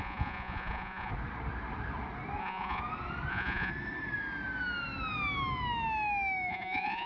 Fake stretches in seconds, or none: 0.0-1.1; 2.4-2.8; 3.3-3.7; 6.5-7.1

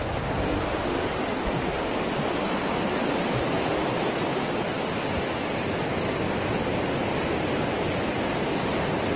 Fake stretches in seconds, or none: none